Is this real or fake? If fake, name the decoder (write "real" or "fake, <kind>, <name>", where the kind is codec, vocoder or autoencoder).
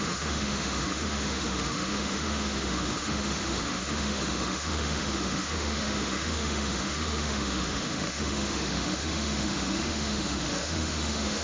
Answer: fake, autoencoder, DAC-VAE